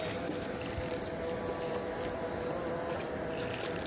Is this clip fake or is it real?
real